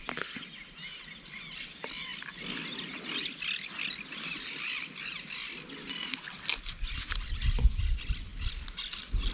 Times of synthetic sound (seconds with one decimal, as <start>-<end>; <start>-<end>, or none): none